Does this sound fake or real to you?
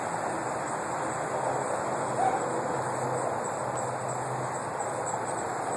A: real